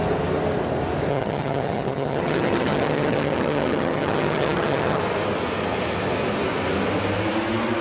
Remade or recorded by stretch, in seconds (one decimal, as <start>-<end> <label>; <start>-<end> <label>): 0.0-1.1 recorded; 1.1-5.0 remade; 5.0-7.8 recorded